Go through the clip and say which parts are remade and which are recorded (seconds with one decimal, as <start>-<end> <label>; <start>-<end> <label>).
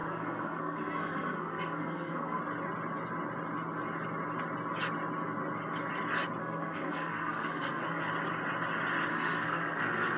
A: 0.0-2.4 remade; 2.4-6.4 recorded; 6.4-8.1 remade; 8.1-9.1 recorded; 9.1-10.2 remade